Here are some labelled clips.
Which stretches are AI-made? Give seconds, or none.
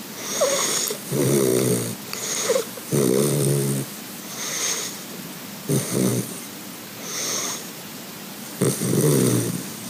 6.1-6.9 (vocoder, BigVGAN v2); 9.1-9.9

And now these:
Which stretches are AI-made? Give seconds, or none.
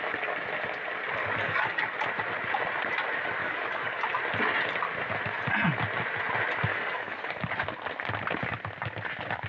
1.2-1.9 (codec, DAC); 3.4-4.0; 6.7-7.4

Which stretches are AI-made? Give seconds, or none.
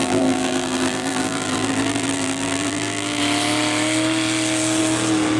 0.0-3.2 (vocoder, BigVGAN v2)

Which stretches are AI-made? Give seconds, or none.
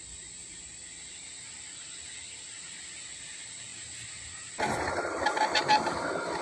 0.4-1.3 (vocoder, BigVGAN v2)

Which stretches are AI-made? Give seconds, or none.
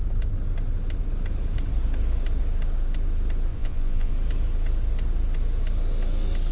3.5-4.1 (vocoder, Vocos)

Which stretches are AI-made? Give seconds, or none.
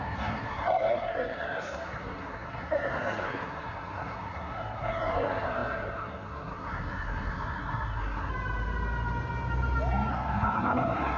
0.0-8.3 (codec, SNAC); 10.1-11.2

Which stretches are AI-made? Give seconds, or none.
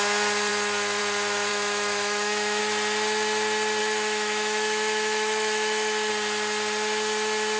1.5-2.6 (autoencoder, DAC-VAE); 3.8-6.1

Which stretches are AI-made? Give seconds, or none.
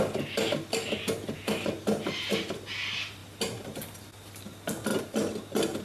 none